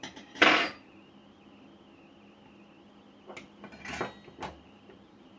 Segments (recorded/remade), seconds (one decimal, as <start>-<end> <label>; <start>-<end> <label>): 0.0-1.2 remade; 1.2-4.4 recorded; 4.4-5.4 remade